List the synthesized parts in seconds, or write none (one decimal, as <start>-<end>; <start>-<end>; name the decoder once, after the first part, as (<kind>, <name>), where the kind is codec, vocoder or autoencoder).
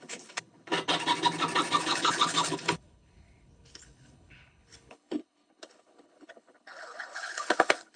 0.0-0.7 (codec, HILCodec); 1.8-8.0